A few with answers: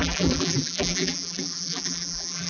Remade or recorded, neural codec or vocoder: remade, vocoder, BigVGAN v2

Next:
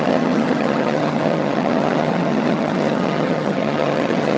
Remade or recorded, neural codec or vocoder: remade, vocoder, HiFi-GAN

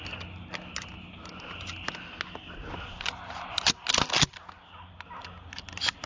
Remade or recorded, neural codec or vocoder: recorded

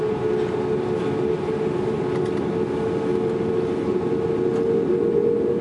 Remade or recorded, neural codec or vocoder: recorded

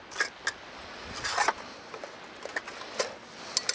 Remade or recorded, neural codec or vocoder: recorded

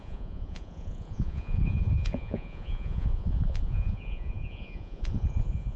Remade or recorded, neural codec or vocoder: remade, vocoder, Vocos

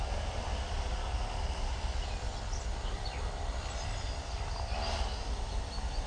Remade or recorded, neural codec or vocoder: recorded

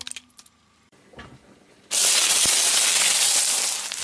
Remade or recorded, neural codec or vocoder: recorded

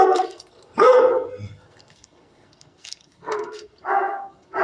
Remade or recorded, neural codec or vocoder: remade, codec, SNAC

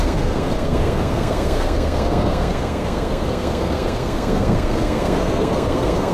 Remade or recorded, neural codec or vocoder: remade, codec, SNAC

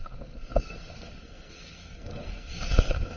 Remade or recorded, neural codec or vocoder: remade, codec, SNAC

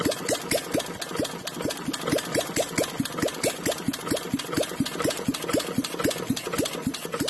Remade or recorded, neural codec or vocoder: recorded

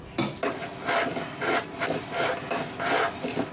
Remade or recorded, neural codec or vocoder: recorded